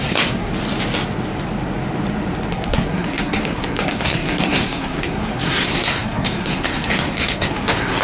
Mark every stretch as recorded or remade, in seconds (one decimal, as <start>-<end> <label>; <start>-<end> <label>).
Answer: 0.0-0.5 remade; 0.5-2.5 recorded; 2.5-8.0 remade